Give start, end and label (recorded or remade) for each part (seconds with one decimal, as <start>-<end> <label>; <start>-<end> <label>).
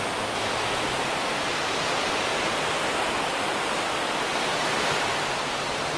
0.0-4.5 recorded; 4.5-6.0 remade